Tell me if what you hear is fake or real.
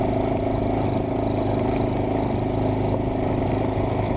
real